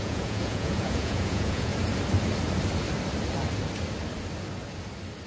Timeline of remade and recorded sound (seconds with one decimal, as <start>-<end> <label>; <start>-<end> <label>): 0.0-1.7 remade; 1.7-5.3 recorded